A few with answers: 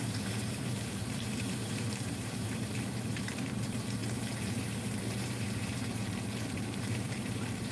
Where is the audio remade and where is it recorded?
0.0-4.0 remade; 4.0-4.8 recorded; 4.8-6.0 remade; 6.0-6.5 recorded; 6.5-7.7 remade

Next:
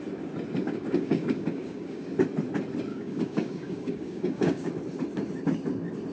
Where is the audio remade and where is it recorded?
0.0-0.6 recorded; 0.6-2.1 remade; 2.1-2.9 recorded; 2.9-4.7 remade; 4.7-6.1 recorded

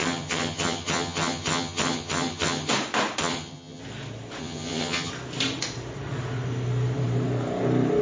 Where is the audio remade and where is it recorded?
0.0-2.7 remade; 2.7-3.2 recorded; 3.2-3.8 remade; 3.8-4.4 recorded; 4.4-5.1 remade; 5.1-8.0 recorded

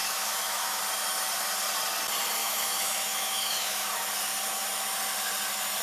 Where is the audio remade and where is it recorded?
0.0-0.8 remade; 0.8-2.4 recorded; 2.4-3.9 remade; 3.9-5.8 recorded